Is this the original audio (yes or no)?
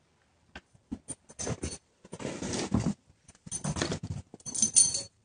yes